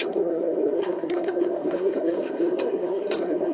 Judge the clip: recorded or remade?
remade